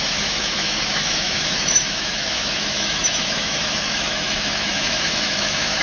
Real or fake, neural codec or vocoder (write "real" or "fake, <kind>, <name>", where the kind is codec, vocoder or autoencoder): fake, autoencoder, DAC-VAE